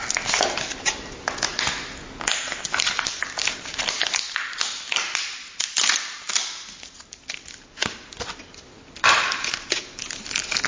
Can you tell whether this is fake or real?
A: real